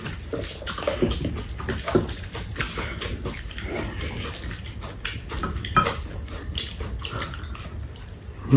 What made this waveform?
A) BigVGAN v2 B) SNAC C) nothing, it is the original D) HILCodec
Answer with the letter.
C